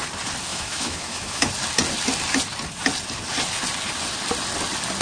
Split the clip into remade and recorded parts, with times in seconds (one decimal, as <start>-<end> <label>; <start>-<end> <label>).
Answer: 0.0-0.5 recorded; 0.5-1.5 remade; 1.5-5.0 recorded